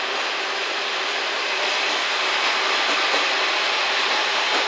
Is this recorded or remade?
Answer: recorded